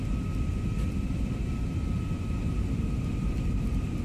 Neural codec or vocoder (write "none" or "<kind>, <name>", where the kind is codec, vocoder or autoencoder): none